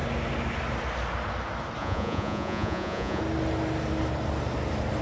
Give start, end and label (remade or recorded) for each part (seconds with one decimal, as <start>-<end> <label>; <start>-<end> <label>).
0.0-1.8 recorded; 1.8-3.2 remade; 3.2-5.0 recorded